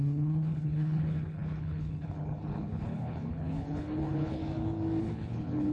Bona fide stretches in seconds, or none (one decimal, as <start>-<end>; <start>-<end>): 4.4-5.0